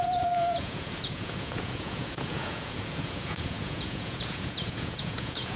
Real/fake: fake